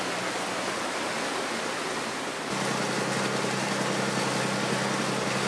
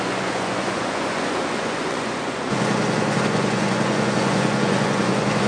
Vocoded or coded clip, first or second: second